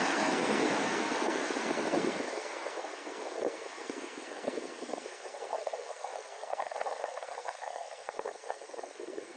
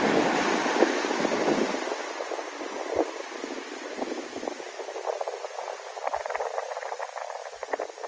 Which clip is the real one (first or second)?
second